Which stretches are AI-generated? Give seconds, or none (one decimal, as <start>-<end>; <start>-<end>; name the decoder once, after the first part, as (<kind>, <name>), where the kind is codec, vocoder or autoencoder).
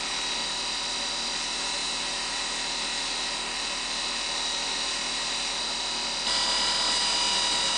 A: none